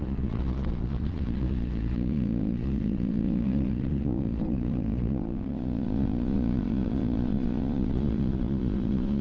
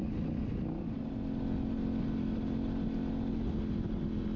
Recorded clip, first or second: second